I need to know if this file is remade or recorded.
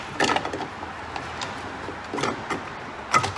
recorded